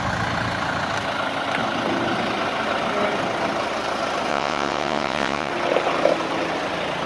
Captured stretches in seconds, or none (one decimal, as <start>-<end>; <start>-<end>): 0.0-4.3; 5.5-7.1